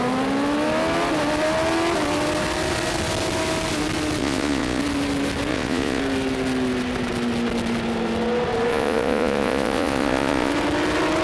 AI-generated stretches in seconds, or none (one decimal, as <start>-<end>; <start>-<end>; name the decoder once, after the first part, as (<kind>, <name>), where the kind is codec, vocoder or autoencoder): 4.2-4.8 (vocoder, Vocos); 5.5-6.0; 8.7-10.5